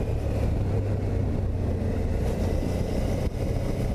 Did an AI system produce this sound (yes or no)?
no